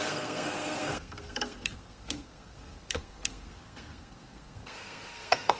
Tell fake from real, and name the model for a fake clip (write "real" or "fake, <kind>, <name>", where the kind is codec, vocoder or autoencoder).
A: fake, codec, SNAC